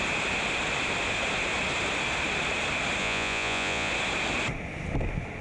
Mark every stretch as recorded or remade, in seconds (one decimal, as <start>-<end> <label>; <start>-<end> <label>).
0.0-3.0 recorded; 3.0-3.9 remade; 3.9-5.4 recorded